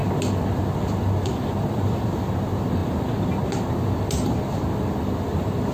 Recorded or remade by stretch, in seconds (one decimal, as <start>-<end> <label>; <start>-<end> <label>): 0.0-5.7 recorded